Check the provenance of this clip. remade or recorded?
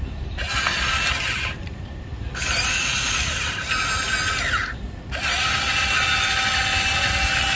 recorded